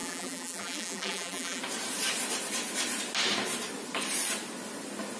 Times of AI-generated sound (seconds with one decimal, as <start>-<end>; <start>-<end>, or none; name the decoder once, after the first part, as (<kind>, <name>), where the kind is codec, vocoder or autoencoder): 0.0-1.6 (vocoder, BigVGAN v2)